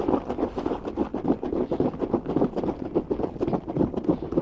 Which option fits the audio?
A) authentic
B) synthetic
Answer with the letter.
A